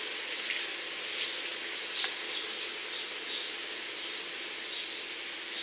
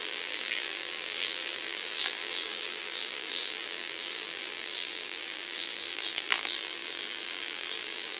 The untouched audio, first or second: first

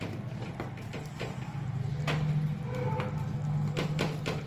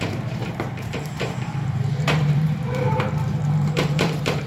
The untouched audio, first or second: first